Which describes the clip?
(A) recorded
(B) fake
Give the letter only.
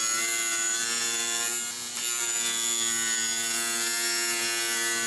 A